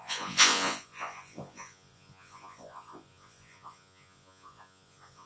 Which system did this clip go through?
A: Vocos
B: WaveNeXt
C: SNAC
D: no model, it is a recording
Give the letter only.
A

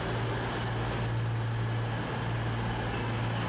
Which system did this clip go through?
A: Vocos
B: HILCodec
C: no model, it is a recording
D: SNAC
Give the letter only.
C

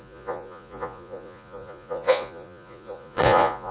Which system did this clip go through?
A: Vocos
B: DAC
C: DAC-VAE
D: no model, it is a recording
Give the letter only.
A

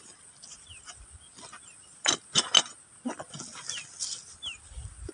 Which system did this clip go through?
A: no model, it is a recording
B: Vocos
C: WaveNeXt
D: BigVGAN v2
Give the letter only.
A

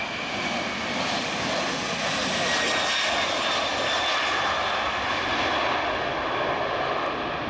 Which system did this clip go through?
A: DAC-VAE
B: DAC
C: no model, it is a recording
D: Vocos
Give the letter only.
C